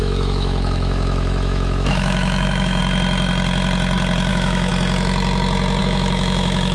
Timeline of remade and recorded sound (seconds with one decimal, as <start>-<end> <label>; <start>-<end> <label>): 0.0-2.8 remade; 2.8-4.3 recorded; 4.3-4.7 remade; 4.7-5.8 recorded; 5.8-6.7 remade